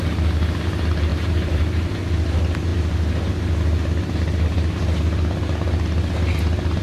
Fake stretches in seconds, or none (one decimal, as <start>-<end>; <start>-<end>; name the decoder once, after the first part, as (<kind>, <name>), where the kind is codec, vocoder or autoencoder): 1.1-1.9 (vocoder, BigVGAN v2)